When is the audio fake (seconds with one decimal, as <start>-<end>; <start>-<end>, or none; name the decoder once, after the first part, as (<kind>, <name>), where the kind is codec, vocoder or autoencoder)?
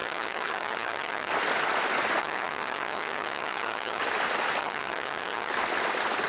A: 0.0-1.3 (vocoder, HiFi-GAN); 2.2-4.0; 4.6-5.5